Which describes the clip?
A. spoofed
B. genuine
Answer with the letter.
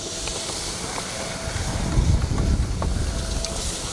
B